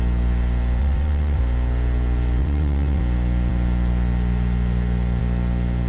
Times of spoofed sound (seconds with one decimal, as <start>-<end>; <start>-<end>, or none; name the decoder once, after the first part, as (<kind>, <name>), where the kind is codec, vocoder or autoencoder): 0.8-1.4 (vocoder, WaveNeXt); 2.4-3.0